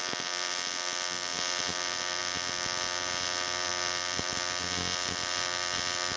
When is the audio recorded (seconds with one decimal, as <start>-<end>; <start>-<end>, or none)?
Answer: 0.0-6.2